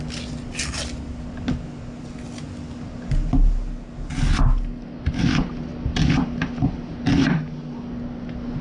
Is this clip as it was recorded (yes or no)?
yes